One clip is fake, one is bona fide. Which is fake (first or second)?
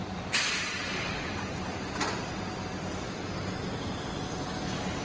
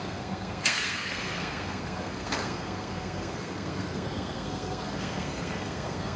second